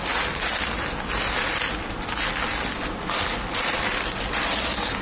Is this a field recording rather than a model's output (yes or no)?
yes